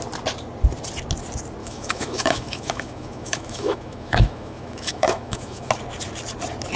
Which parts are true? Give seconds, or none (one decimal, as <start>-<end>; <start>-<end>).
0.0-1.6; 5.7-6.8